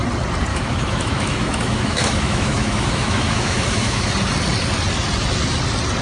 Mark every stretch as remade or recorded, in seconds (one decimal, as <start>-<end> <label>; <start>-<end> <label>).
0.0-0.5 recorded; 0.5-4.1 remade; 4.1-6.0 recorded